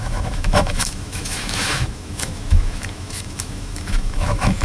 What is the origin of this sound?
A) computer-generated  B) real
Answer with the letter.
A